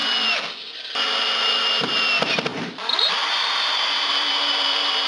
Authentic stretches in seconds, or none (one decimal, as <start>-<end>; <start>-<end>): 0.0-1.2